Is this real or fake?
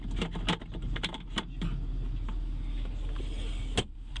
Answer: real